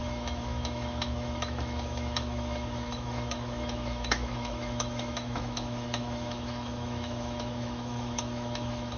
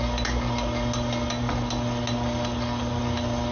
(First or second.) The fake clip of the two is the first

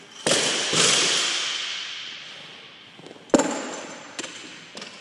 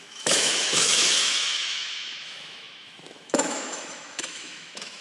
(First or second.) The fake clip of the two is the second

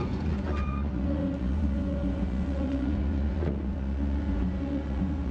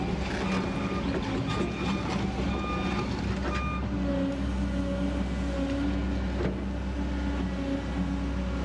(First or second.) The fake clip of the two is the first